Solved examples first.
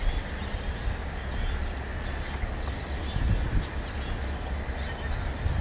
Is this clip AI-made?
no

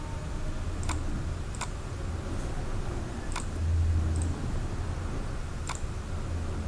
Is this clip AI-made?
no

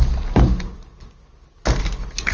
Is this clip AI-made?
no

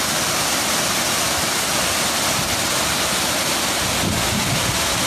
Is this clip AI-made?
no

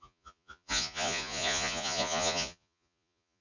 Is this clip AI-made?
yes